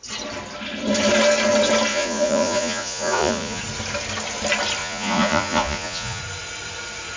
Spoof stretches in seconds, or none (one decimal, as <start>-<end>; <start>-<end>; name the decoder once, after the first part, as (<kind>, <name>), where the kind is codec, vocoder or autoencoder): 1.9-3.6 (vocoder, Vocos); 4.8-6.2